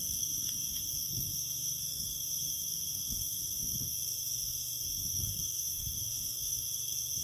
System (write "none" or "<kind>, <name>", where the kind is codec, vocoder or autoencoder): codec, SNAC